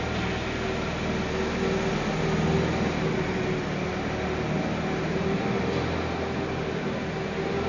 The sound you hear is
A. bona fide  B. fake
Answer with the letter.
A